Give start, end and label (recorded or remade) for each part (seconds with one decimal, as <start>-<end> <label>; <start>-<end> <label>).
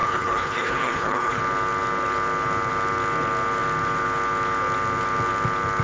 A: 0.0-1.4 remade; 1.4-5.8 recorded